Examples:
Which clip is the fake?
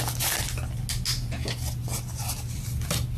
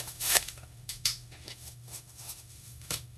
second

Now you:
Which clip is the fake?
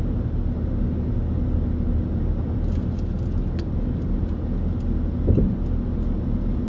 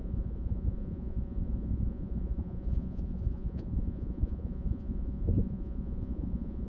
second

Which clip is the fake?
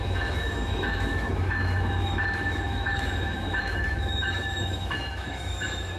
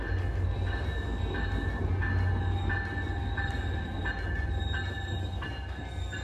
first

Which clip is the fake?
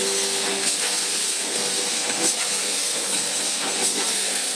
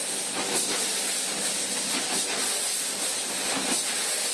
first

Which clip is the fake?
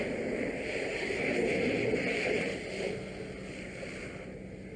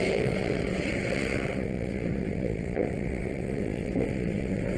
second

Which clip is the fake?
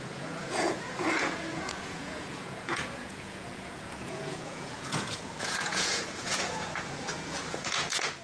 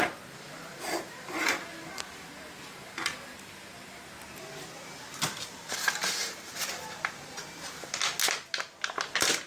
first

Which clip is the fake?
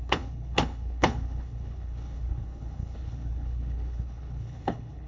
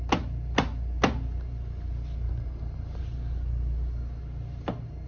first